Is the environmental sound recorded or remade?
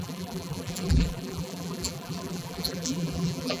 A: remade